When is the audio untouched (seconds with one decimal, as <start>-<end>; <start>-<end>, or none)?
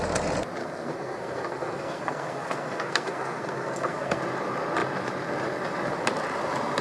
0.0-0.6; 4.2-6.8